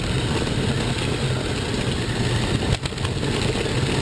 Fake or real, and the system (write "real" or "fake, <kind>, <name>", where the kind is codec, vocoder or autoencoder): real